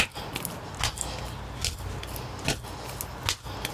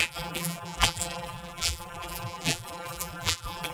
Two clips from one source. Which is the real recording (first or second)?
first